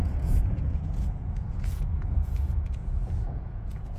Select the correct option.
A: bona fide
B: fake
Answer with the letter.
B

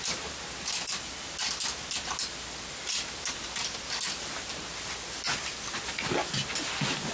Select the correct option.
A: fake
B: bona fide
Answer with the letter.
B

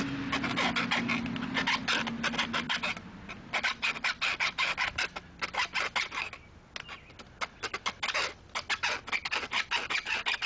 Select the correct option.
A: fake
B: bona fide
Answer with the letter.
B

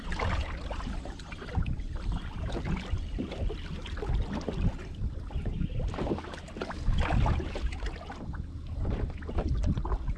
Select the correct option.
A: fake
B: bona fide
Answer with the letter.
B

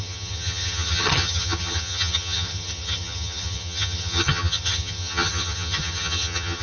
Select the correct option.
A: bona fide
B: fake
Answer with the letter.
B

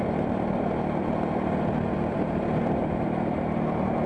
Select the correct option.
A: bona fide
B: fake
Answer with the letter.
A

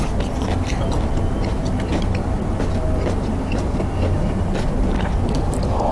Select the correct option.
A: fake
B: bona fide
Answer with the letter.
B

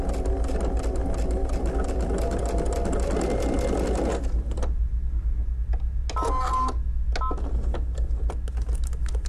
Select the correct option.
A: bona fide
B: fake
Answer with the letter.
A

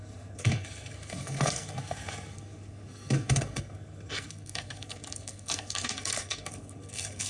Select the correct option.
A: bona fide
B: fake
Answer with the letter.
B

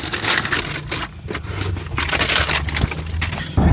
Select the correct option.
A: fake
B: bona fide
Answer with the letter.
B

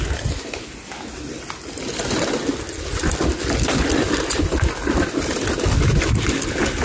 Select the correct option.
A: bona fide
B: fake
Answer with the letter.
A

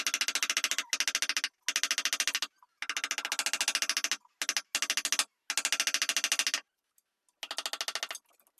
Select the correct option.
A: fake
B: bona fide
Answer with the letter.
B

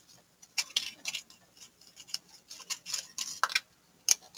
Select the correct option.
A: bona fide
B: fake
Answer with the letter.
A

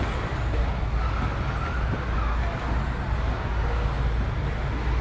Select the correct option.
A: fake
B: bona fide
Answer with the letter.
B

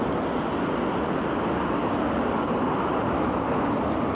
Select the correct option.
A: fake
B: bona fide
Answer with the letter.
B